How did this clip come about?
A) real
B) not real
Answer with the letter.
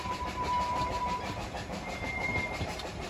B